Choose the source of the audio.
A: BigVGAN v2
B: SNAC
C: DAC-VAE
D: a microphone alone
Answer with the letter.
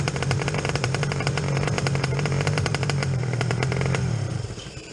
A